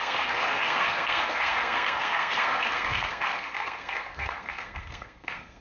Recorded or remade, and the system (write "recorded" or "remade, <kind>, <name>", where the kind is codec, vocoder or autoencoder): remade, codec, SNAC